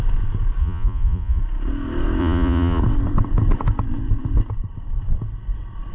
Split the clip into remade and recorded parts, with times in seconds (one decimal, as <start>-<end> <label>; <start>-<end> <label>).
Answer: 0.0-0.6 recorded; 0.6-1.4 remade; 1.4-2.2 recorded; 2.2-2.8 remade; 2.8-5.9 recorded